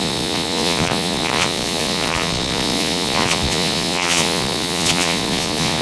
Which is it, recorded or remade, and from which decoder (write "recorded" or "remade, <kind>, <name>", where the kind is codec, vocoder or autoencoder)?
remade, vocoder, Vocos